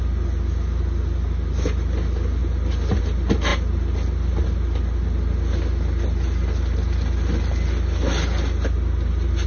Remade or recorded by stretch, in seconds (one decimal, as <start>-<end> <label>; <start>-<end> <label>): 0.0-9.5 recorded